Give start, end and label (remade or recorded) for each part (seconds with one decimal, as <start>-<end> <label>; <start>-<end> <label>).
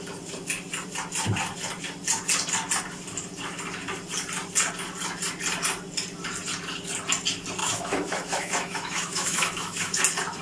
0.0-7.6 recorded; 7.6-10.0 remade; 10.0-10.4 recorded